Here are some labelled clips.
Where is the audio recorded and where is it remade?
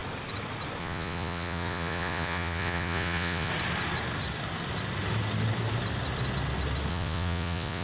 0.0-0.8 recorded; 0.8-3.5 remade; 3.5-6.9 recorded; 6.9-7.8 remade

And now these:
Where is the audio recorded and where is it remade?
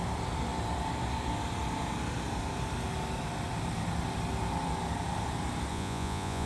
0.0-5.7 recorded; 5.7-6.5 remade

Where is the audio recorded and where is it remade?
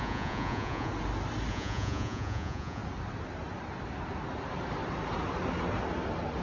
0.0-0.9 remade; 0.9-1.5 recorded; 1.5-2.8 remade; 2.8-6.4 recorded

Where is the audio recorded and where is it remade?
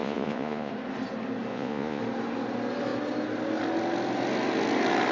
0.0-0.7 remade; 0.7-1.5 recorded; 1.5-2.0 remade; 2.0-5.1 recorded